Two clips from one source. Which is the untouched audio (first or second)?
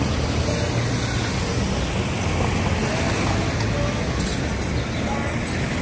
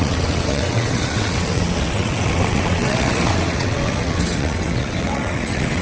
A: first